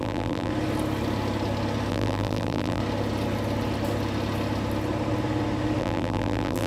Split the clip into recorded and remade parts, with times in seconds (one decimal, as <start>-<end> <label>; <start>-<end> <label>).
0.0-0.5 remade; 0.5-1.9 recorded; 1.9-2.8 remade; 2.8-5.8 recorded; 5.8-6.7 remade